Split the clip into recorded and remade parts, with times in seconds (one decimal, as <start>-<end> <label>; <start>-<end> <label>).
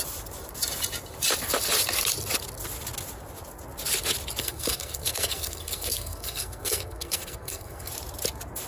0.0-4.4 recorded; 4.4-7.9 remade; 7.9-8.7 recorded